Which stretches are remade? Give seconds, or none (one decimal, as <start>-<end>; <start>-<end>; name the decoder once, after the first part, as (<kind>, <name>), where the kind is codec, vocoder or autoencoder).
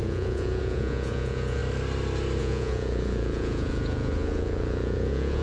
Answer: 0.0-1.6 (vocoder, Vocos); 2.4-5.4